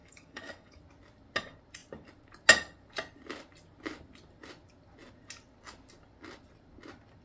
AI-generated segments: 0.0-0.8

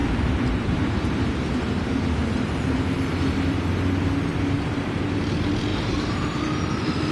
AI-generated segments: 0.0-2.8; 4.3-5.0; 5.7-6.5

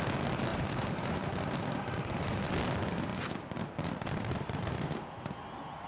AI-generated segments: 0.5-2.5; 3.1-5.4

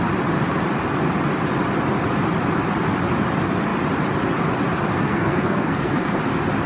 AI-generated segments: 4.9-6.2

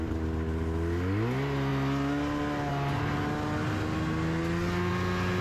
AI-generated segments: none

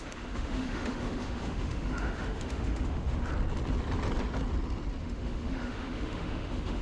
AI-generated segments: 0.0-3.3; 5.0-6.8

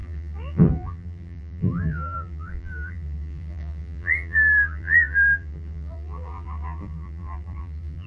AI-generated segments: 0.0-8.1